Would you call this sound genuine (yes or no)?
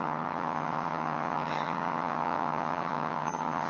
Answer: no